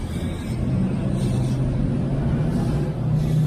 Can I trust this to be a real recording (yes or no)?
yes